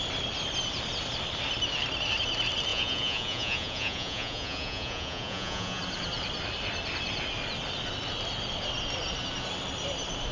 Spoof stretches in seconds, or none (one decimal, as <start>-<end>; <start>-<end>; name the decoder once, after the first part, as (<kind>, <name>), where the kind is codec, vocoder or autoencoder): 2.7-5.8 (vocoder, Vocos)